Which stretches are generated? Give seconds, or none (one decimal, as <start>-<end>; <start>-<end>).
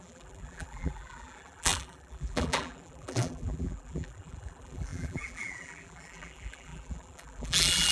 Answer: 0.0-7.9